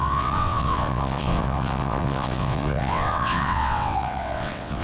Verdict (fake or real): fake